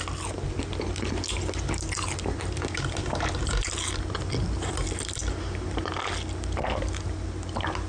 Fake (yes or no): no